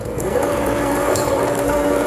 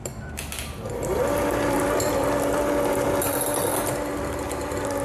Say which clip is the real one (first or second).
second